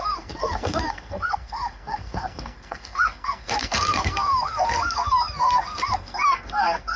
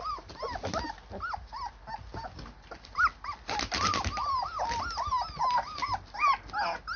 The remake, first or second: first